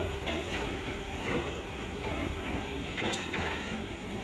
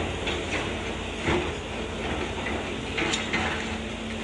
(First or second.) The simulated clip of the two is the first